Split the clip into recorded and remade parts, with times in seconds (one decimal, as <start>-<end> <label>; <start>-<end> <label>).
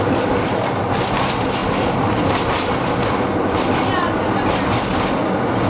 0.0-5.7 recorded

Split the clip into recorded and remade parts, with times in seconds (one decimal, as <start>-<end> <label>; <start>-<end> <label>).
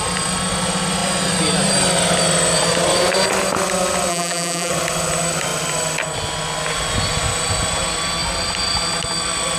0.0-4.1 recorded; 4.1-4.7 remade; 4.7-9.6 recorded